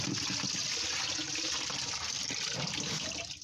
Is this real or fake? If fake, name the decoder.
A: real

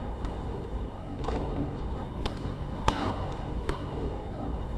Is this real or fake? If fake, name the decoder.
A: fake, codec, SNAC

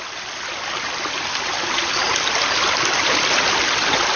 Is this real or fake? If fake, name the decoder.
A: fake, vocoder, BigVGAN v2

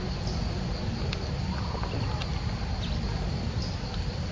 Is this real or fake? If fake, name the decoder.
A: real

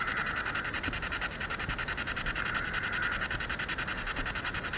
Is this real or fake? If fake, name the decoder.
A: real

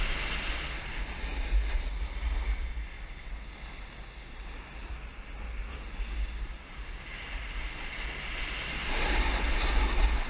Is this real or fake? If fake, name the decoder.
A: real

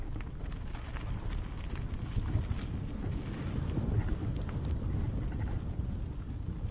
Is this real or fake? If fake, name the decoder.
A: real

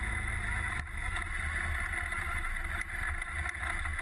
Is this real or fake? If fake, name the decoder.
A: real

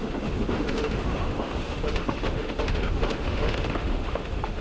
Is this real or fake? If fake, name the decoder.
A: fake, autoencoder, DAC-VAE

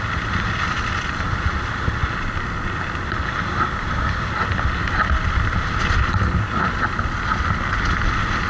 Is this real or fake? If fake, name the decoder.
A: real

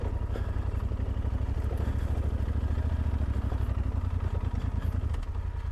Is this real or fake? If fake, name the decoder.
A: real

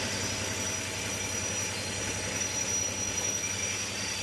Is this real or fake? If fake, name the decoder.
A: real